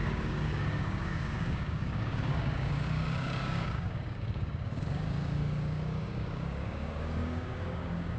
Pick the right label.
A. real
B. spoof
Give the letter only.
B